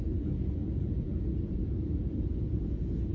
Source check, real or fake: fake